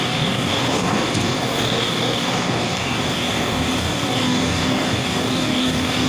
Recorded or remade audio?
remade